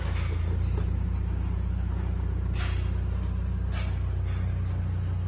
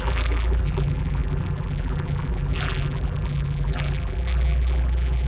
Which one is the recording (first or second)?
first